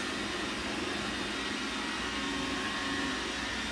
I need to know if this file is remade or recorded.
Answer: recorded